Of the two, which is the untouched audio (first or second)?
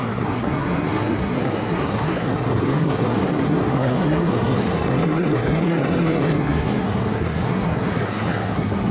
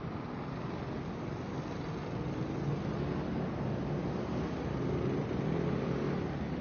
second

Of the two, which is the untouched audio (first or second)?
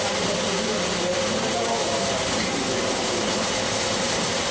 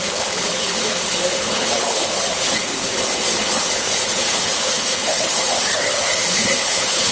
first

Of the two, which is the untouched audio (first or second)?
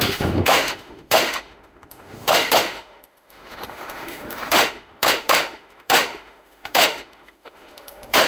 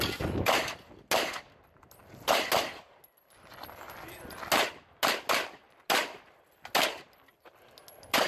second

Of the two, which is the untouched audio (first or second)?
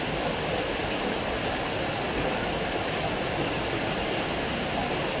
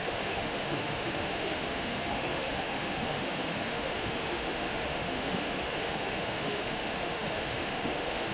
first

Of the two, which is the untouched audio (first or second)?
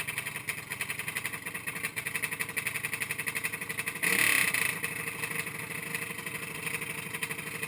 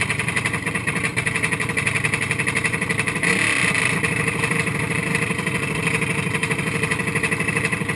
first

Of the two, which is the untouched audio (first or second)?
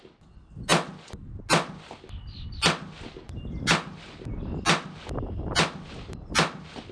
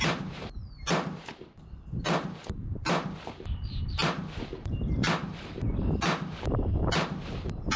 first